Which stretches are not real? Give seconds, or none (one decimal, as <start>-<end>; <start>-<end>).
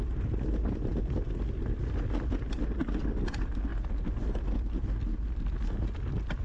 none